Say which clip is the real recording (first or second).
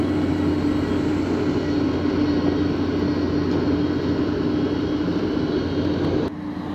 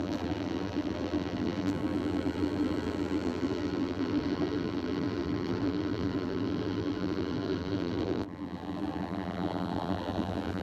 first